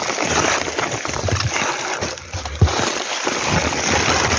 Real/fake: real